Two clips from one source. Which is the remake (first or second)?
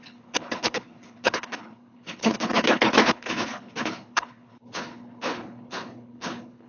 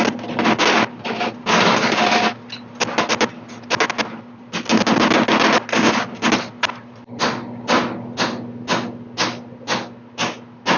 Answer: first